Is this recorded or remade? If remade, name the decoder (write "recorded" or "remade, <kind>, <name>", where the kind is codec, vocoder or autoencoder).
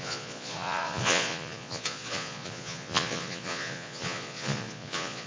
remade, vocoder, Vocos